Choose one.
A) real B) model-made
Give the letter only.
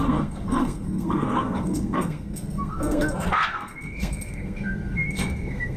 B